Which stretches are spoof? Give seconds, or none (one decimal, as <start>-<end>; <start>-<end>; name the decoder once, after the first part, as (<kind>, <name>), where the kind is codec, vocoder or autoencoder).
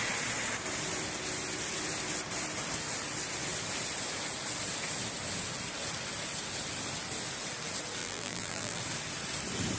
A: 8.0-8.8 (vocoder, BigVGAN v2)